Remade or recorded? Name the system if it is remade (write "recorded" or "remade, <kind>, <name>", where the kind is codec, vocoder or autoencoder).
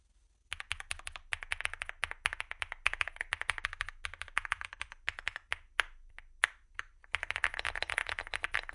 recorded